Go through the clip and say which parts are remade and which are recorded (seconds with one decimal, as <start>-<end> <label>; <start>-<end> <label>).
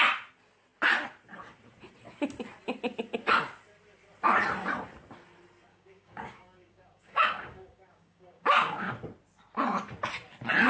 0.0-5.7 recorded; 5.7-8.9 remade; 8.9-10.7 recorded